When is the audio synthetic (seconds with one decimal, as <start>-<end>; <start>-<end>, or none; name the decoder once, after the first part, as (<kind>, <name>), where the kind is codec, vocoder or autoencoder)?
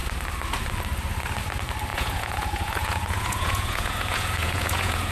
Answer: 1.9-5.1 (vocoder, Vocos)